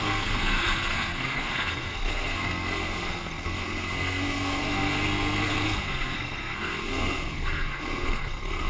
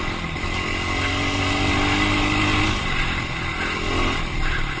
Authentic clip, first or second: second